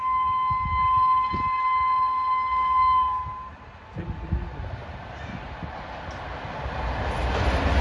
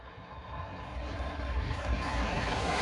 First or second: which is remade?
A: second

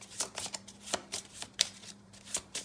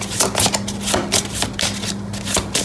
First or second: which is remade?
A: first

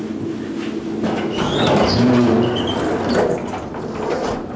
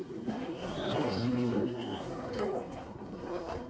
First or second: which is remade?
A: second